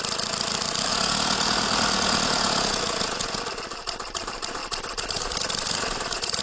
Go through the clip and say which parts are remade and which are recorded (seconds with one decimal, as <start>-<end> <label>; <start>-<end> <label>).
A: 0.0-0.9 recorded; 0.9-3.4 remade; 3.4-6.4 recorded